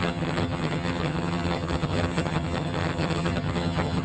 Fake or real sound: fake